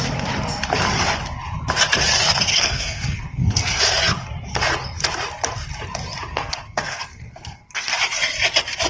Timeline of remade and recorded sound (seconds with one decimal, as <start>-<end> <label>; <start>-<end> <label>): 0.0-2.5 recorded; 2.5-3.8 remade; 3.8-6.3 recorded; 6.3-7.9 remade; 7.9-8.9 recorded

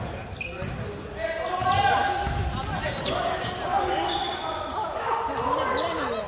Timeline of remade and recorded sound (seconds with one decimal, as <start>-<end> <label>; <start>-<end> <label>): 0.0-6.3 recorded

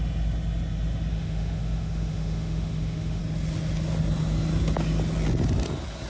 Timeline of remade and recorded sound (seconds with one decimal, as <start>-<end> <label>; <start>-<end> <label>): 0.0-1.1 recorded; 1.1-3.2 remade; 3.2-6.1 recorded

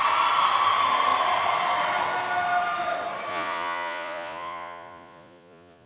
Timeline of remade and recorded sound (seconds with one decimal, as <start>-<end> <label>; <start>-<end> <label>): 0.0-3.3 recorded; 3.3-5.9 remade